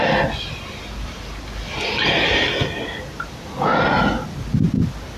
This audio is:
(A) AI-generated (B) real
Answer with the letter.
B